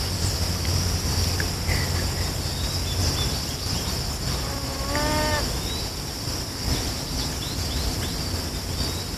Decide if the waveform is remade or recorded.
recorded